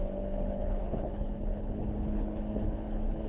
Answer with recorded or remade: remade